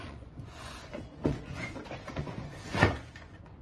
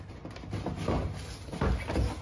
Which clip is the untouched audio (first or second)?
second